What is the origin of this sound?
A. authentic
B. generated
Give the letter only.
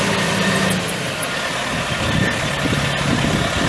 A